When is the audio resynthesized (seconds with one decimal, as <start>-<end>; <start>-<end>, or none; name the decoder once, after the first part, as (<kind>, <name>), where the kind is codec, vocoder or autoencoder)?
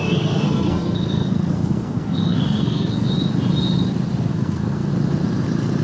0.0-3.1 (codec, SNAC); 4.3-4.9